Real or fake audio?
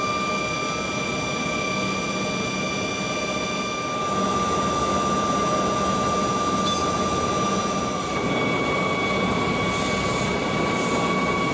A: real